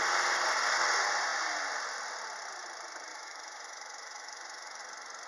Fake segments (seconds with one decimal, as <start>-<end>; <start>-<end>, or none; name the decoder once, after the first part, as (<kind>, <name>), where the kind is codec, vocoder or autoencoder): 3.1-4.8 (autoencoder, DAC-VAE)